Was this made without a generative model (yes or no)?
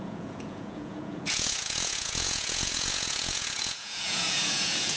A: no